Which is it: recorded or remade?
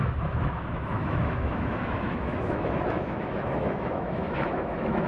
remade